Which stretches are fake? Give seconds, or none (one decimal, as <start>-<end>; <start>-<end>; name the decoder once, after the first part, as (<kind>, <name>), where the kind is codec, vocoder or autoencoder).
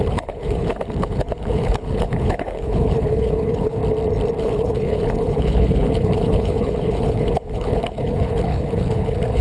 0.0-3.8 (codec, HILCodec); 4.4-9.4